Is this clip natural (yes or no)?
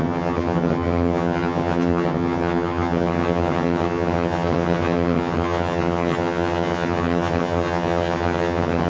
no